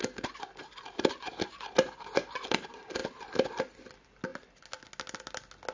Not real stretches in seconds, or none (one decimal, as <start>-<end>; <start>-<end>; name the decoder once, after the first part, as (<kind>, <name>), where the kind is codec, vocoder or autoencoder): none